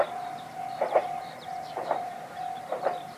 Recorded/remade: remade